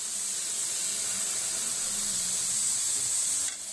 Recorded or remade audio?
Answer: recorded